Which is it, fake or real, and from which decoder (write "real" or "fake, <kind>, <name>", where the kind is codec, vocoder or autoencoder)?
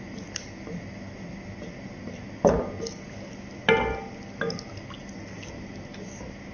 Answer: real